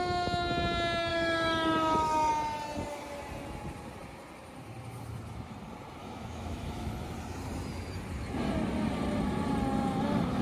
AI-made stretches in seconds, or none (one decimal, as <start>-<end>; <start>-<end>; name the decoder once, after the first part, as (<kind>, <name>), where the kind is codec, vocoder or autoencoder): 1.1-2.3 (autoencoder, DAC-VAE); 6.0-6.9